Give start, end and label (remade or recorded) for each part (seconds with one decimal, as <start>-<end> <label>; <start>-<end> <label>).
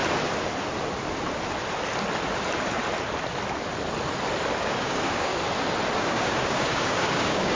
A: 0.0-4.6 recorded; 4.6-5.3 remade; 5.3-6.0 recorded; 6.0-7.6 remade